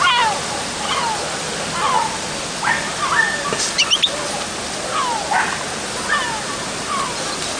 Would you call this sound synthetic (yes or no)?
no